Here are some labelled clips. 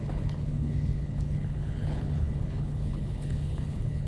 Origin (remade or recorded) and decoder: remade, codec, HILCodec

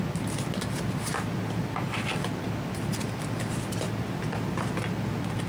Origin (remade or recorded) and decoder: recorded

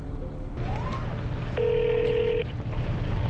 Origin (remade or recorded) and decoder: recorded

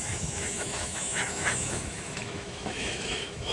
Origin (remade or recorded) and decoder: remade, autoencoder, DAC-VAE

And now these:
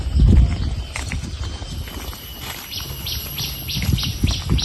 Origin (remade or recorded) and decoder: recorded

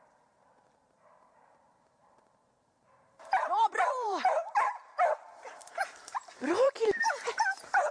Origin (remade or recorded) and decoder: remade, vocoder, BigVGAN v2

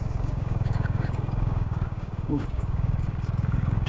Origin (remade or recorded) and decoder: remade, codec, DAC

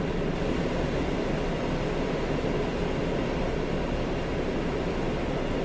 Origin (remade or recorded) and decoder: recorded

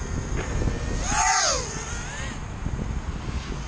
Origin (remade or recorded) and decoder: recorded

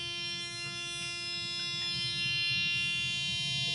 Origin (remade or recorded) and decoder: recorded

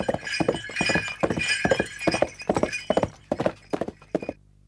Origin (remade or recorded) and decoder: remade, vocoder, BigVGAN v2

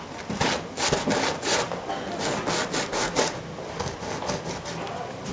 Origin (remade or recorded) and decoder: recorded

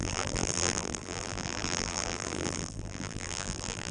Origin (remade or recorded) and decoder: remade, vocoder, BigVGAN v2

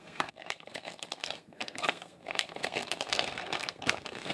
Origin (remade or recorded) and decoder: remade, codec, SNAC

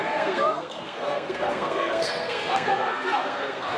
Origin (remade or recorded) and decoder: remade, codec, SNAC